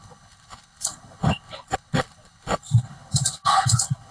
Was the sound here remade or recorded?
remade